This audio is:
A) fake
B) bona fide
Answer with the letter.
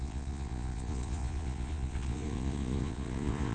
A